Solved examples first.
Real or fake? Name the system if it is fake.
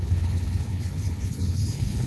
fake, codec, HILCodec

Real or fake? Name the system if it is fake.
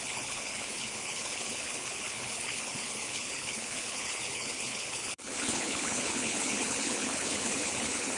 fake, codec, HILCodec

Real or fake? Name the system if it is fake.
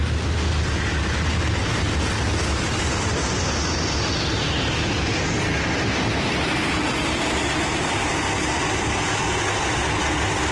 real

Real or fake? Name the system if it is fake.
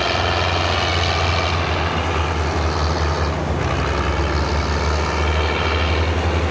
real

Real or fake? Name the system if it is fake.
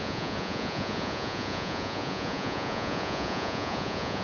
fake, vocoder, Vocos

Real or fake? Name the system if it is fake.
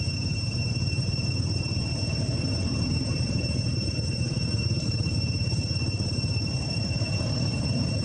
fake, vocoder, BigVGAN v2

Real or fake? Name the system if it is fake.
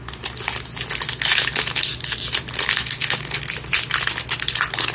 real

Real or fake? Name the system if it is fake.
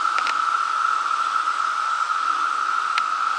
fake, vocoder, BigVGAN v2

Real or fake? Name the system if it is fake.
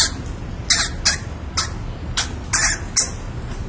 real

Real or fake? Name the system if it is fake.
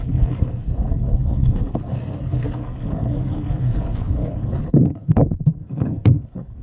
fake, codec, SNAC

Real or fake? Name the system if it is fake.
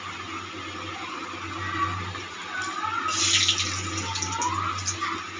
real